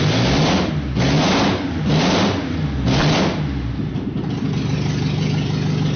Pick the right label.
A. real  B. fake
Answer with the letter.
A